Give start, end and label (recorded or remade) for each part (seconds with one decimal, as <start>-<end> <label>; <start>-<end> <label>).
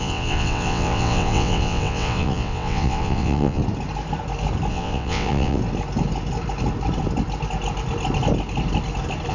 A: 0.0-3.6 remade; 3.6-4.7 recorded; 4.7-5.6 remade; 5.6-9.3 recorded